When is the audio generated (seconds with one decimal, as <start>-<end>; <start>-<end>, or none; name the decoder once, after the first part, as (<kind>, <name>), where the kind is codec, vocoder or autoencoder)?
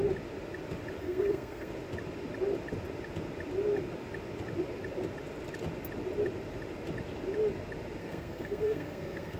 1.0-1.7 (codec, SNAC); 8.0-9.4